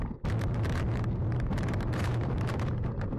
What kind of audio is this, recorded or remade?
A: remade